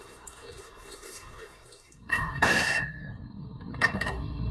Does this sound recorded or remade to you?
remade